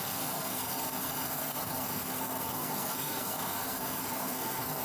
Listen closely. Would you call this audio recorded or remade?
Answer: remade